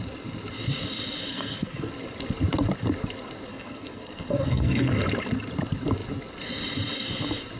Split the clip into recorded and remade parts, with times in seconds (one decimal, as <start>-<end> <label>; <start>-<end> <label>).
0.0-1.3 recorded; 1.3-1.9 remade; 1.9-3.5 recorded; 3.5-4.9 remade; 4.9-7.6 recorded